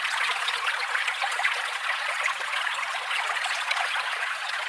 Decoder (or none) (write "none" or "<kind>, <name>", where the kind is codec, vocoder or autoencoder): vocoder, Vocos